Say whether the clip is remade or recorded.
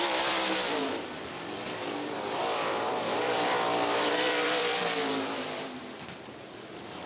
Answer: remade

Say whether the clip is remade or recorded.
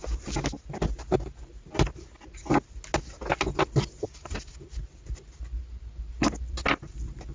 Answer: recorded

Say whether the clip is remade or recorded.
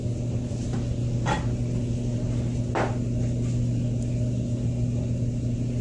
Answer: recorded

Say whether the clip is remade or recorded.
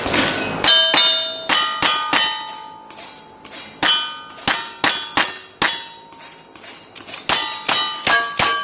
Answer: recorded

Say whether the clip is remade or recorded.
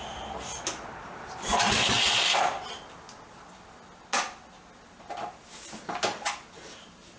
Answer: recorded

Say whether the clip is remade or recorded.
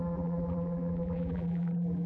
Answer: remade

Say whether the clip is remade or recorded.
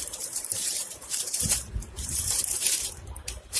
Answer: remade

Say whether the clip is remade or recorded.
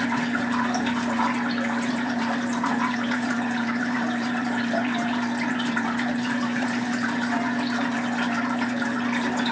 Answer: remade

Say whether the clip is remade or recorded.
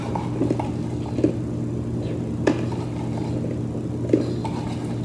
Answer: recorded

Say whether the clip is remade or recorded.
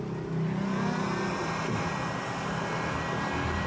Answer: recorded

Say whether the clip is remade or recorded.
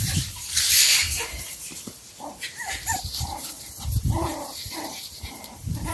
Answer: remade